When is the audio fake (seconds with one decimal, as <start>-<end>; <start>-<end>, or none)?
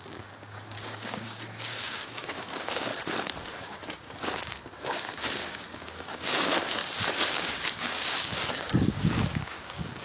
0.0-2.9; 3.4-6.8; 7.3-10.0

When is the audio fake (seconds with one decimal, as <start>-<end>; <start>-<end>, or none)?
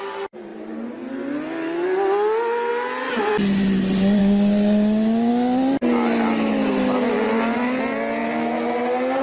4.2-5.3